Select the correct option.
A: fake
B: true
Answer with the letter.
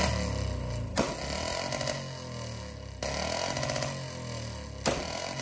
B